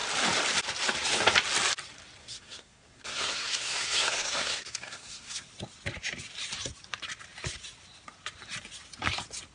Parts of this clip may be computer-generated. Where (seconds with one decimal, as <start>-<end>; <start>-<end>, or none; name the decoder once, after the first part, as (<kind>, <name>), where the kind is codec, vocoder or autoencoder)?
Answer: 2.2-5.5 (codec, SNAC)